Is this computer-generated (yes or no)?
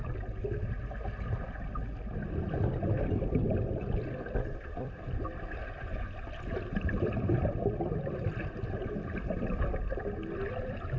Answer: no